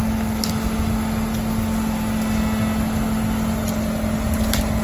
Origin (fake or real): real